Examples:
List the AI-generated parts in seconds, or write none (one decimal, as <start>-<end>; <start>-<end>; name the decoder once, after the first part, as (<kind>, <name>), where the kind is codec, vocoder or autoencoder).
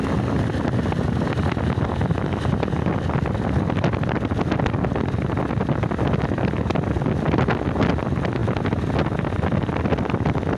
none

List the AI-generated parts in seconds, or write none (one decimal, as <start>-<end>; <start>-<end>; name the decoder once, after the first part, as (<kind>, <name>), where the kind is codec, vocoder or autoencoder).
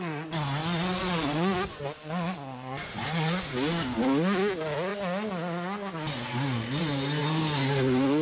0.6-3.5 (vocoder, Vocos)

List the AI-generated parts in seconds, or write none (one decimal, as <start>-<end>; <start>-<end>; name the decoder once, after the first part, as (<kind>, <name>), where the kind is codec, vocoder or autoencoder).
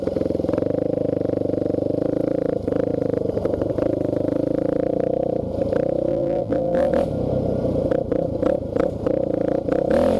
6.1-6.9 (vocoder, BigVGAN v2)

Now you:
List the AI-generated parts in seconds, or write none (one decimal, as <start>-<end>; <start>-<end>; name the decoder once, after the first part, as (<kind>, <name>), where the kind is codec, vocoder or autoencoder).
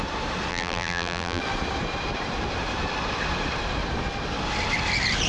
0.5-1.4 (vocoder, BigVGAN v2)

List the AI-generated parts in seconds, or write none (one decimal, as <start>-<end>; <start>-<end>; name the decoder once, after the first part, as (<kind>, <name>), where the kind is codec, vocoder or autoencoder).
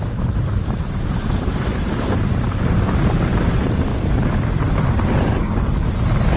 0.0-3.9 (vocoder, BigVGAN v2)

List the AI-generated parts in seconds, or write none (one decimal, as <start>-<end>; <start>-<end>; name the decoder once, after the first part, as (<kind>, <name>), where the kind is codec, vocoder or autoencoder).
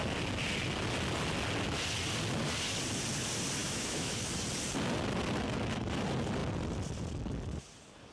3.6-4.2 (autoencoder, DAC-VAE)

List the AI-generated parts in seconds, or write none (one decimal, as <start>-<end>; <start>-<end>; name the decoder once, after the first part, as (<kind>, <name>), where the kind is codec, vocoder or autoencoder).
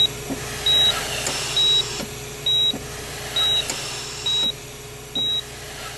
none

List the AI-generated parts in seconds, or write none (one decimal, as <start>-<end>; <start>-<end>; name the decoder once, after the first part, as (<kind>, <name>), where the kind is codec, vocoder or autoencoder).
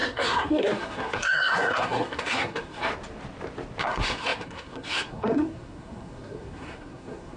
0.0-2.9 (codec, SNAC); 3.8-7.4